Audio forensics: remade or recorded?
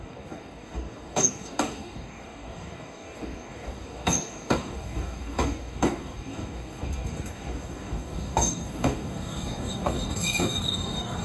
remade